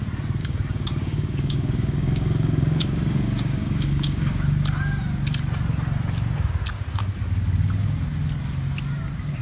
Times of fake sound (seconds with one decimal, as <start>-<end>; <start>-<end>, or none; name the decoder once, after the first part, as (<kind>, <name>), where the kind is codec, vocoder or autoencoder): 0.4-4.3 (codec, DAC)